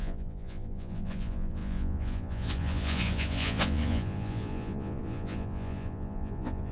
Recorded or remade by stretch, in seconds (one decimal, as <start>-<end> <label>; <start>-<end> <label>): 0.0-6.7 remade